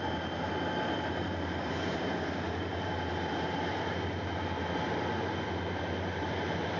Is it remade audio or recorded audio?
remade